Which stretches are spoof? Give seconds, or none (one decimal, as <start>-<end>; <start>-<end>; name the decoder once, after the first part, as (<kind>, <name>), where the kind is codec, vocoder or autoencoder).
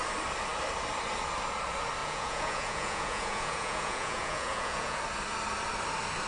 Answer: 2.0-5.0 (vocoder, Vocos)